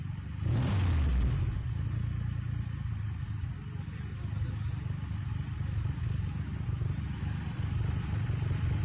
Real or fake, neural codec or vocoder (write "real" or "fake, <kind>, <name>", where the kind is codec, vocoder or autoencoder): real